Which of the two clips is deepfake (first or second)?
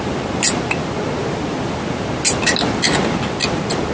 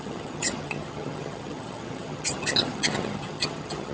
second